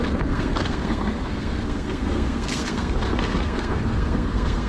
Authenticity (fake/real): fake